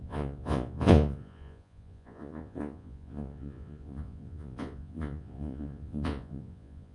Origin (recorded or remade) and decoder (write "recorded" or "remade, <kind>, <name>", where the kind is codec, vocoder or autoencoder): remade, vocoder, Vocos